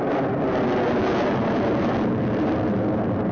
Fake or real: real